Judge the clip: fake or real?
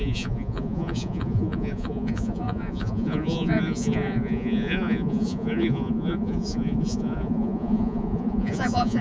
fake